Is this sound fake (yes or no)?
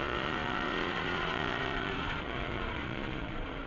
yes